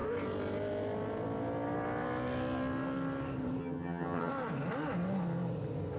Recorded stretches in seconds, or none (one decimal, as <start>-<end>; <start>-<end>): 0.0-3.6; 4.3-6.0